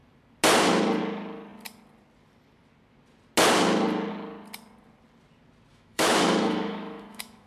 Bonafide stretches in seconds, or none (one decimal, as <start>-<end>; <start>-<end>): 0.0-5.7